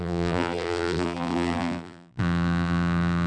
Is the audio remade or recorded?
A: remade